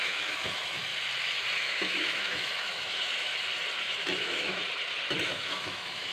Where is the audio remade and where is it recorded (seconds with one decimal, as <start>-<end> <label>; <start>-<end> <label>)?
0.0-0.9 remade; 0.9-1.6 recorded; 1.6-3.3 remade; 3.3-3.8 recorded; 3.8-4.6 remade; 4.6-5.2 recorded; 5.2-6.1 remade